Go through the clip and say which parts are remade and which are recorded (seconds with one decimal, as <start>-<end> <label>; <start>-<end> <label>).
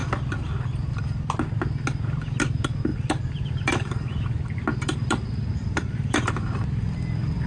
0.0-2.9 recorded; 2.9-7.5 remade